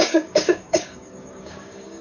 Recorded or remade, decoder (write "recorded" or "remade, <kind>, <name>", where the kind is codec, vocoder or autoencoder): remade, codec, DAC